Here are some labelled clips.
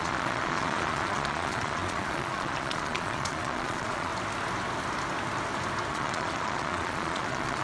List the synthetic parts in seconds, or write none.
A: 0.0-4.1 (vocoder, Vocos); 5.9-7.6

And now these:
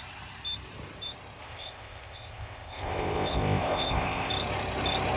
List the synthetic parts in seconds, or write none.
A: 1.4-4.3 (codec, ZipCodec)

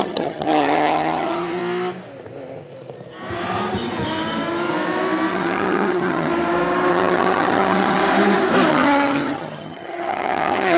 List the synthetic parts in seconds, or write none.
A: 0.0-1.6 (vocoder, HiFi-GAN); 5.3-6.3; 6.9-8.0; 8.7-10.8

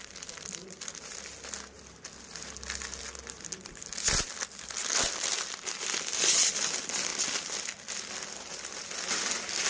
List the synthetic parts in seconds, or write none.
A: none

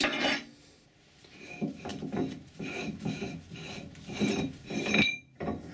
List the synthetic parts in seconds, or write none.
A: none

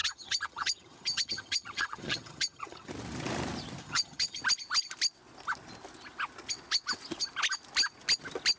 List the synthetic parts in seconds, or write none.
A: 0.0-2.9 (vocoder, HiFi-GAN); 3.8-4.4

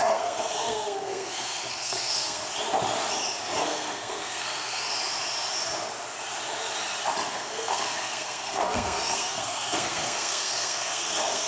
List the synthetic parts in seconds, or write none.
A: 0.0-2.5 (codec, SNAC); 3.6-4.9; 7.3-11.5

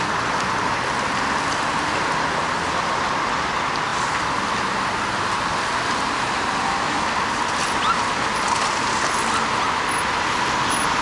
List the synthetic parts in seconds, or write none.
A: 3.9-4.4 (vocoder, BigVGAN v2)